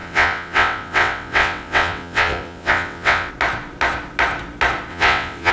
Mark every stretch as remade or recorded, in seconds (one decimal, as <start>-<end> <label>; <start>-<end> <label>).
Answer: 0.0-3.3 remade; 3.3-4.9 recorded; 4.9-5.5 remade